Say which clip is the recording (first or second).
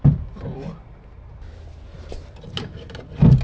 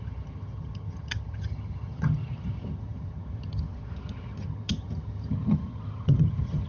first